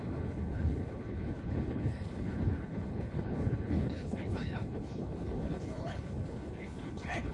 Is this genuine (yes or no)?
no